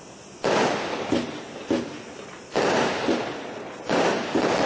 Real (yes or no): yes